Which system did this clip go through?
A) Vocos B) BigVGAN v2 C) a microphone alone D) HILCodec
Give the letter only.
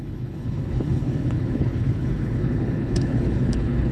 D